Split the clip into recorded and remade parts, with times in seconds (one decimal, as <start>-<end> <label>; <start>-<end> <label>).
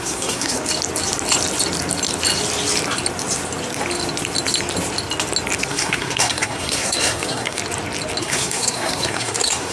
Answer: 0.0-0.6 remade; 0.6-5.7 recorded; 5.7-7.6 remade; 7.6-8.2 recorded; 8.2-9.7 remade